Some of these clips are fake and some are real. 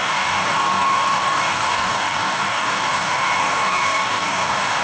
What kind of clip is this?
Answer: fake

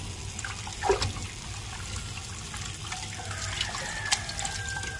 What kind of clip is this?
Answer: real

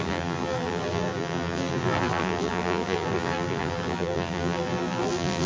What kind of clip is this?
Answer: fake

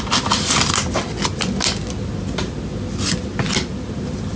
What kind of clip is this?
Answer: real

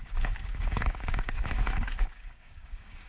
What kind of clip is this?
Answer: fake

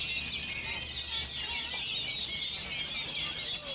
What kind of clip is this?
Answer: real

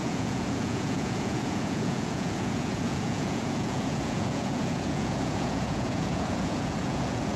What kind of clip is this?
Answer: fake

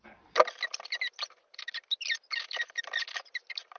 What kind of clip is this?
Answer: real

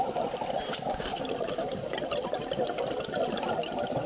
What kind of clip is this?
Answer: real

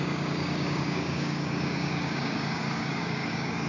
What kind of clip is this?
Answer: fake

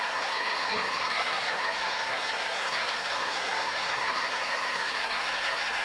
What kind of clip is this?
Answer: fake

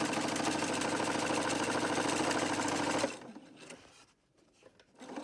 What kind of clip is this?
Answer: real